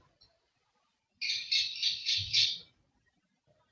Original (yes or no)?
no